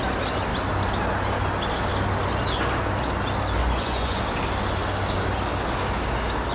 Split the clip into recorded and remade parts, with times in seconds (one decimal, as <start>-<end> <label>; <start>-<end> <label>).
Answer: 0.0-3.6 recorded; 3.6-4.2 remade; 4.2-6.5 recorded